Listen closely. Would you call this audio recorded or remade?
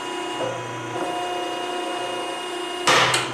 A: recorded